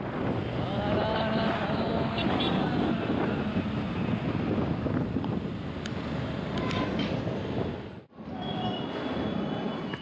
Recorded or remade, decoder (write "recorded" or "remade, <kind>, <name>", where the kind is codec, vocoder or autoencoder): recorded